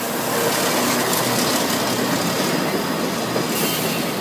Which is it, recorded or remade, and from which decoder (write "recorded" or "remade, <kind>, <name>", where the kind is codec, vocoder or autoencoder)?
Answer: recorded